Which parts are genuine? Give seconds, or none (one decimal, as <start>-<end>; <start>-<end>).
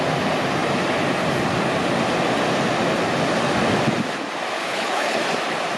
0.0-4.6; 5.2-5.8